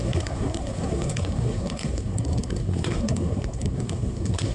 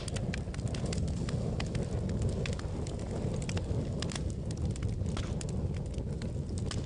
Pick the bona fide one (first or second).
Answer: second